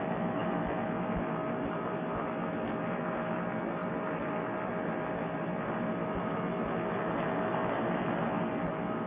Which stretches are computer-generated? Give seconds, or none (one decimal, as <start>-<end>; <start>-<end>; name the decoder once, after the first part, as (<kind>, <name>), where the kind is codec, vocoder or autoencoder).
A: 3.8-4.7 (vocoder, BigVGAN v2)